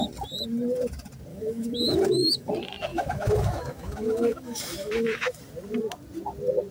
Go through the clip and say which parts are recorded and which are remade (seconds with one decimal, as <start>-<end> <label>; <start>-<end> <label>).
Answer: 0.0-1.3 recorded; 1.3-2.5 remade; 2.5-2.9 recorded; 2.9-5.4 remade; 5.4-6.7 recorded